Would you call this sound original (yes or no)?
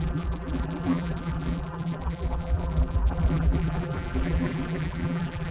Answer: no